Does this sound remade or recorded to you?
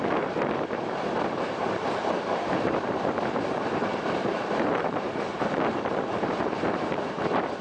remade